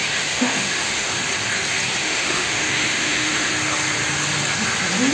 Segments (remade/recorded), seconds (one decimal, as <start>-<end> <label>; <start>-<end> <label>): 0.0-1.1 remade; 1.1-2.0 recorded; 2.0-3.5 remade; 3.5-5.1 recorded